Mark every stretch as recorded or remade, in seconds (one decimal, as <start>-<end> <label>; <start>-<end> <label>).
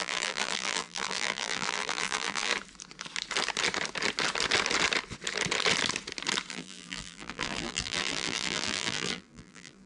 0.0-2.5 remade; 2.5-6.5 recorded; 6.5-9.9 remade